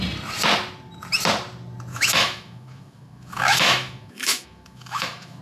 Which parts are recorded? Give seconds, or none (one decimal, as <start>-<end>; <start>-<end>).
0.0-1.9